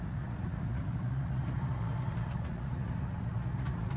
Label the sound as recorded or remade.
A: remade